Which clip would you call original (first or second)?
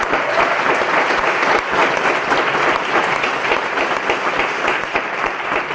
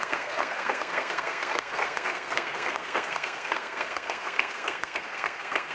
first